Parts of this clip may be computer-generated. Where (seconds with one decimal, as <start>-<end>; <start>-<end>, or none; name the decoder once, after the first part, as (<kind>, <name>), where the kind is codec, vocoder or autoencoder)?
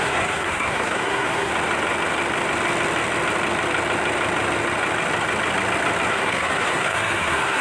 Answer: 0.0-1.5 (codec, SNAC); 6.1-7.6